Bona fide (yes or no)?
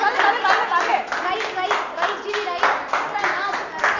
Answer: yes